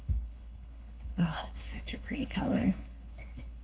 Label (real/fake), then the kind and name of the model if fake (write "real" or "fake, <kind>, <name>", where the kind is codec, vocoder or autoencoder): fake, codec, HILCodec